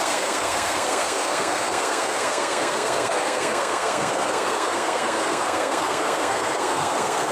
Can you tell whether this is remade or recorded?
remade